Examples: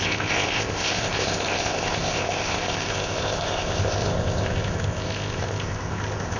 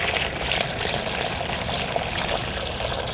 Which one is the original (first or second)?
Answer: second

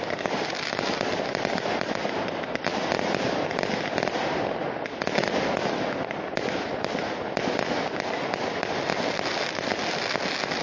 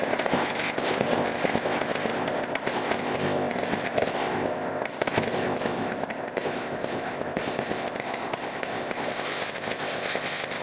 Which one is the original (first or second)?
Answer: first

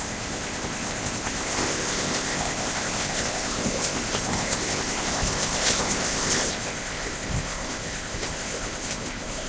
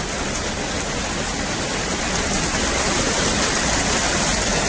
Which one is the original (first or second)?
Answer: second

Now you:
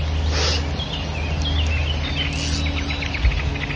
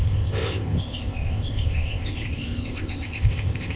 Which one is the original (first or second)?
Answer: first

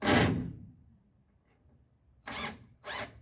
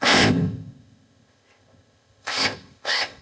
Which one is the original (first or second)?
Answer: first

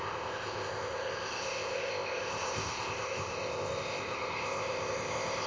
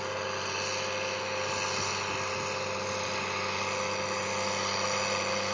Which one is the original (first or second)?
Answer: second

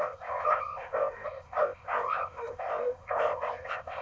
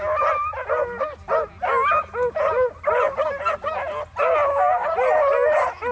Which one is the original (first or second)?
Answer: second